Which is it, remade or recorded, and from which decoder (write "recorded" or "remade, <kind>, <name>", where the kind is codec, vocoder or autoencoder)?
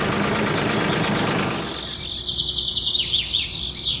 remade, vocoder, BigVGAN v2